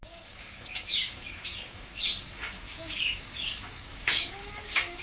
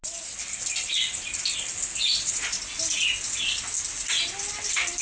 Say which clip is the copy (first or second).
first